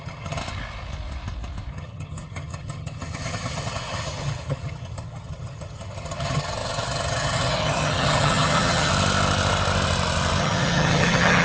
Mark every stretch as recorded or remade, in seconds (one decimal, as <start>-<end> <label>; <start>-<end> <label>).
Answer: 0.0-0.4 remade; 0.4-1.7 recorded; 1.7-8.9 remade; 8.9-10.4 recorded; 10.4-11.4 remade